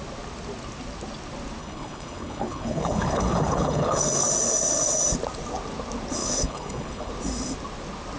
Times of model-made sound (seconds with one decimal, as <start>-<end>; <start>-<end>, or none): 1.6-4.3; 6.2-7.1